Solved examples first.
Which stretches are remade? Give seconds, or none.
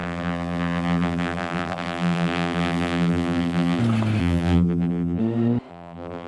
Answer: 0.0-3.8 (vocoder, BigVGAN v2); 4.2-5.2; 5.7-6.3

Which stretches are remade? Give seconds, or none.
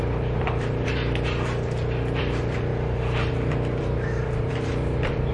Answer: 0.0-1.0 (vocoder, BigVGAN v2); 2.2-2.7; 3.8-5.3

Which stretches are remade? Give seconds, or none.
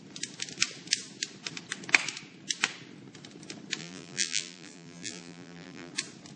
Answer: 3.8-5.9 (vocoder, BigVGAN v2)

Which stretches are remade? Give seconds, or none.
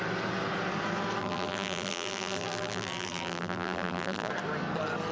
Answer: 1.2-4.3 (vocoder, BigVGAN v2)